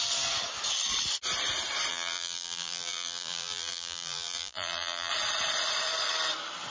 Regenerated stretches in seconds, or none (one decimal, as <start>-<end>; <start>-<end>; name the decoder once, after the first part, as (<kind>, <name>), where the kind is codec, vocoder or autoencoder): 1.9-5.1 (vocoder, BigVGAN v2)